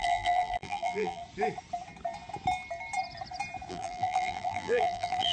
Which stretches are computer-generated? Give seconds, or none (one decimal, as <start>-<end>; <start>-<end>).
0.0-1.2; 3.7-5.3